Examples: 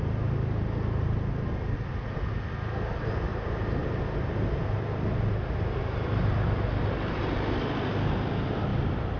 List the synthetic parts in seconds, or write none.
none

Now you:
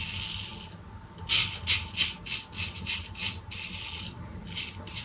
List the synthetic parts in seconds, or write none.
none

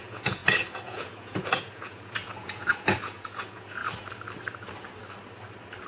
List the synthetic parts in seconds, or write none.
0.0-3.8 (vocoder, Vocos)

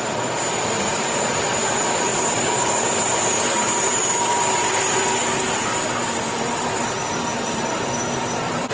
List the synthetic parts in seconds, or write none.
none

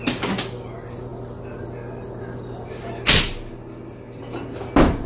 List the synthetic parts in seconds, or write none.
none

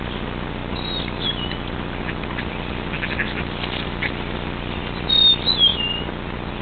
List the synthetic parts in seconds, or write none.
0.6-4.6 (vocoder, BigVGAN v2)

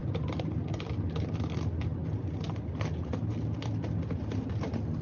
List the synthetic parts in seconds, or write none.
none